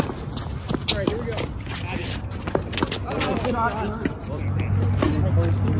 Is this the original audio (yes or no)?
yes